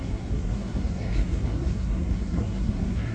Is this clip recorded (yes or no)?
no